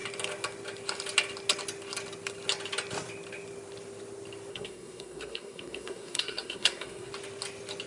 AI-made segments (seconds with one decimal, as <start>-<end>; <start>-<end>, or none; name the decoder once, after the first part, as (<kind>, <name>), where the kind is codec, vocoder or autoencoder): 4.5-7.1 (codec, SNAC)